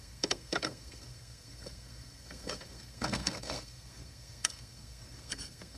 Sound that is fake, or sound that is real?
fake